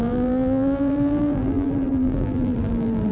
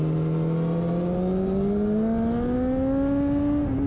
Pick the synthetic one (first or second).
first